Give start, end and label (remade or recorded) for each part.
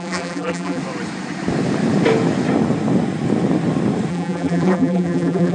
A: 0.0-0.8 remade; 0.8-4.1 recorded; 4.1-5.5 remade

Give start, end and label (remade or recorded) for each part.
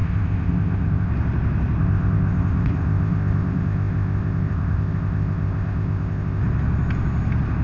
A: 0.0-1.1 remade; 1.1-1.8 recorded; 1.8-6.4 remade; 6.4-7.6 recorded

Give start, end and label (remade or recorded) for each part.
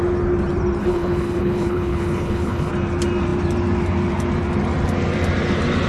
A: 0.0-0.8 recorded; 0.8-2.7 remade; 2.7-5.9 recorded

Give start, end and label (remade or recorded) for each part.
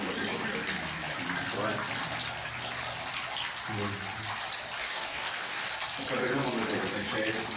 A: 0.0-4.8 recorded; 4.8-5.7 remade; 5.7-7.6 recorded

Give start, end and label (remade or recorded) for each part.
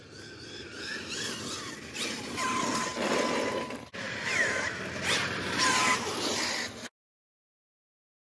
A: 0.0-8.3 recorded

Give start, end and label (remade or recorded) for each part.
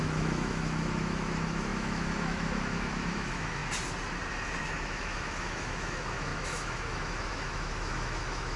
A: 0.0-3.6 remade; 3.6-4.6 recorded; 4.6-8.6 remade